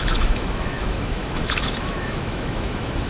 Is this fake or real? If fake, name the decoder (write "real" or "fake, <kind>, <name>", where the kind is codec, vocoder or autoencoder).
fake, autoencoder, DAC-VAE